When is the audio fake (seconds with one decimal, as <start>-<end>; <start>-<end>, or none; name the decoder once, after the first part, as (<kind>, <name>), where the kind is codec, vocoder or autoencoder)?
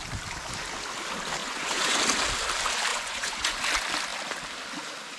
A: 1.4-2.0 (vocoder, Vocos); 2.9-3.6